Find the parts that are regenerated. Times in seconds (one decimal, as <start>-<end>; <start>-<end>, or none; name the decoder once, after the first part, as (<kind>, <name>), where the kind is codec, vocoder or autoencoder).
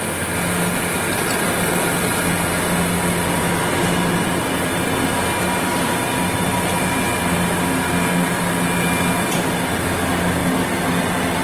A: none